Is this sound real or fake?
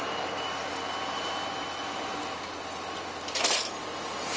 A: real